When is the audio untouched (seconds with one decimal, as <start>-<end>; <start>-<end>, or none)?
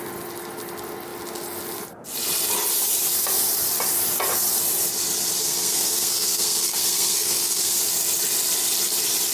0.0-5.4; 7.8-9.3